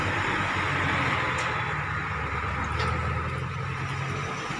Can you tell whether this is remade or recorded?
recorded